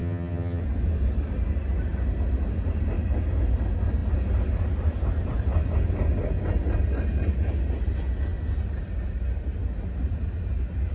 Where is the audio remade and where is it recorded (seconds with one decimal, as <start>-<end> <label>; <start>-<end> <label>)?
0.0-0.6 remade; 0.6-10.9 recorded